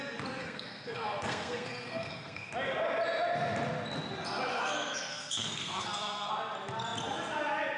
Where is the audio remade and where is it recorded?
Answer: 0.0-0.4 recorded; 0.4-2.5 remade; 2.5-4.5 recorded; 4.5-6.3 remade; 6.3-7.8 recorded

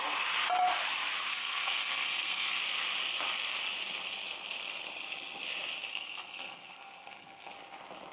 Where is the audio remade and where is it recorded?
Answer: 0.0-1.3 recorded; 1.3-2.6 remade; 2.6-5.9 recorded; 5.9-7.5 remade; 7.5-8.1 recorded

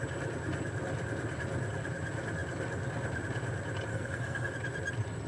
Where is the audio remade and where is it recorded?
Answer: 0.0-3.9 recorded; 3.9-4.5 remade; 4.5-5.3 recorded

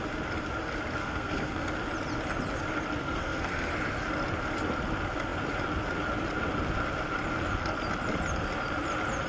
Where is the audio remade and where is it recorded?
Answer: 0.0-1.0 recorded; 1.0-1.7 remade; 1.7-3.0 recorded; 3.0-3.7 remade; 3.7-9.3 recorded